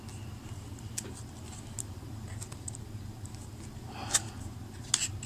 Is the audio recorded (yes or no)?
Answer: yes